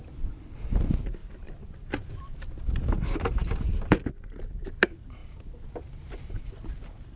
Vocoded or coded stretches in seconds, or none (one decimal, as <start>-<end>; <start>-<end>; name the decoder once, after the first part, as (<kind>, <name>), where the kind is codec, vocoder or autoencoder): none